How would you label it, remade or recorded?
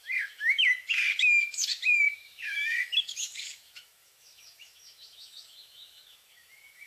remade